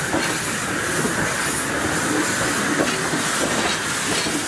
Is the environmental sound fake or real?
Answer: real